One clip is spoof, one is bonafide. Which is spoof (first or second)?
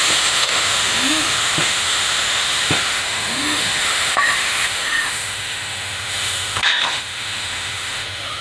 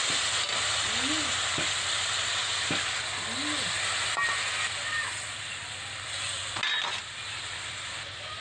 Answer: first